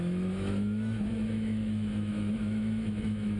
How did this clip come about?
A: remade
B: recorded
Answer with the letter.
A